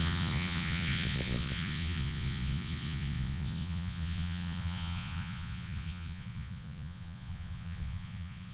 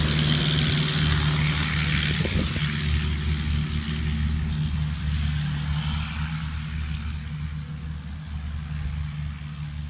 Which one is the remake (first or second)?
first